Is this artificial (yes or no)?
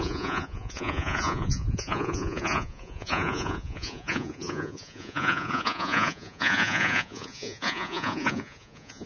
yes